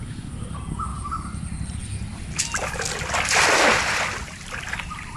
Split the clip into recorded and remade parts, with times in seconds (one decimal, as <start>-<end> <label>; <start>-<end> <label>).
0.0-0.9 recorded; 0.9-1.7 remade; 1.7-5.2 recorded